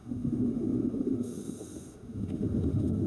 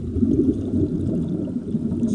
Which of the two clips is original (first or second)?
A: second